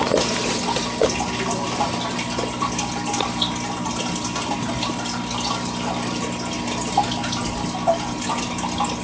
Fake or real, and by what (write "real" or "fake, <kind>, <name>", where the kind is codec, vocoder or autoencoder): real